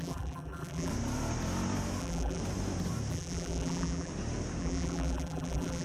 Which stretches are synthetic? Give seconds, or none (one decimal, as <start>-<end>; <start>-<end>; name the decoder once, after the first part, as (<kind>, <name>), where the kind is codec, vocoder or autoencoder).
0.0-0.9 (vocoder, BigVGAN v2); 2.0-2.4; 3.1-4.1; 4.6-5.8

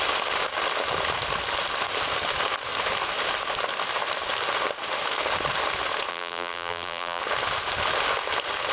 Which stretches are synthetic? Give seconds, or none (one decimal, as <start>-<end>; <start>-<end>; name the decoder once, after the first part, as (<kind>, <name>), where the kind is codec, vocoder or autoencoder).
6.1-7.2 (vocoder, BigVGAN v2)

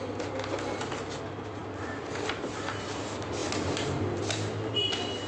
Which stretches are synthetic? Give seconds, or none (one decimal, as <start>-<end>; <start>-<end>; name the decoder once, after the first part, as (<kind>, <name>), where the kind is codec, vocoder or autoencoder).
1.6-2.5 (vocoder, BigVGAN v2); 3.4-4.3

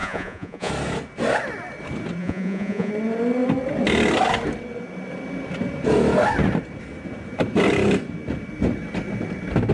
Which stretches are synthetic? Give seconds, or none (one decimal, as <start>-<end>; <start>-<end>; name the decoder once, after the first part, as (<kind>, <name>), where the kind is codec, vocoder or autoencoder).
0.0-0.7 (vocoder, Vocos); 2.2-2.9